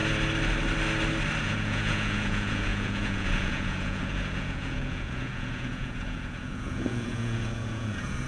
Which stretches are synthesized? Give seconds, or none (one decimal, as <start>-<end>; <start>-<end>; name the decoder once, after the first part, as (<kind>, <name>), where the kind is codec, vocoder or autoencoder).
1.4-8.3 (vocoder, Vocos)